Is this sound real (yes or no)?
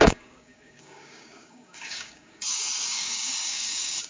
no